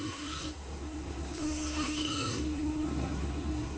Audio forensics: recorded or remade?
remade